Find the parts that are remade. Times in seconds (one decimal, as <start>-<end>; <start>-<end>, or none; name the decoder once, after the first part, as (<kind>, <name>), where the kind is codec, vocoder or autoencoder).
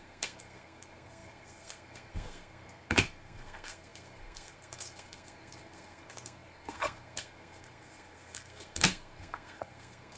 0.0-10.2 (codec, SNAC)